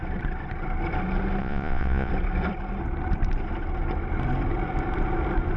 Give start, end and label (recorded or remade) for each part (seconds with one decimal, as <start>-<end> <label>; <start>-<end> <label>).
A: 0.0-1.4 recorded; 1.4-2.1 remade; 2.1-5.6 recorded